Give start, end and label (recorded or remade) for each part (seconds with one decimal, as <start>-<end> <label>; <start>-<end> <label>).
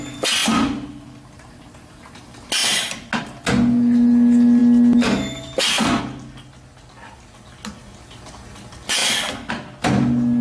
0.0-10.4 recorded